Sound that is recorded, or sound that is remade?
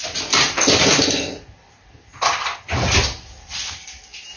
recorded